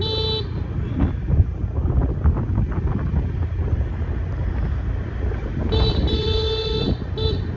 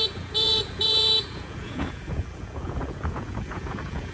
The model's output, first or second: second